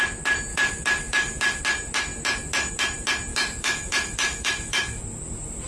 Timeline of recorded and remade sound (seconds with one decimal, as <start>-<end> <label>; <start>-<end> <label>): 0.0-0.5 recorded; 0.5-1.6 remade; 1.6-3.3 recorded; 3.3-5.0 remade; 5.0-5.7 recorded